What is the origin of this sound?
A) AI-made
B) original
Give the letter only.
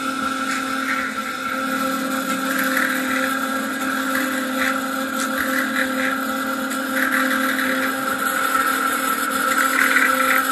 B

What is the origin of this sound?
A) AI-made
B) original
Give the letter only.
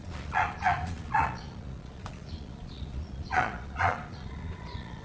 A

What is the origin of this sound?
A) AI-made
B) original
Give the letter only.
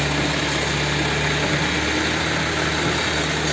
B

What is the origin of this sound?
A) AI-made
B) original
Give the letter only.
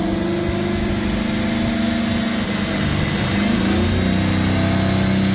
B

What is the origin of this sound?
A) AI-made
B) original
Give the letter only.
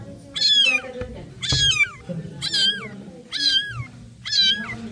B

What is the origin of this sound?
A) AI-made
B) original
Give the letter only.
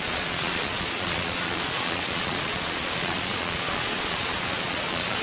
A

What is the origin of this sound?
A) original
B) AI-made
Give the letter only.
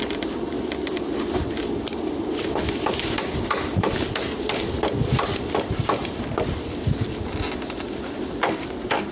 A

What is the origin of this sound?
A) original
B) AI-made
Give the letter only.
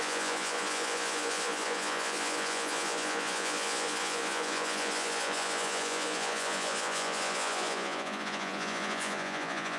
B